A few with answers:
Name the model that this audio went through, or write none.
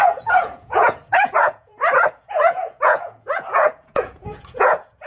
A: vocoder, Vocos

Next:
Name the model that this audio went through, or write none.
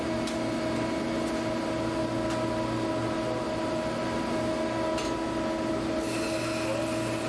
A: none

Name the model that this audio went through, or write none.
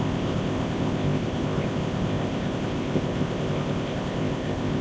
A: codec, ZipCodec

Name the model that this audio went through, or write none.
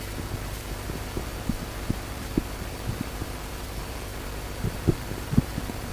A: vocoder, BigVGAN v2